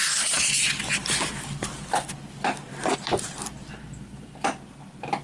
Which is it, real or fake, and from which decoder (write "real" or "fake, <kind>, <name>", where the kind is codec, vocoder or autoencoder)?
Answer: real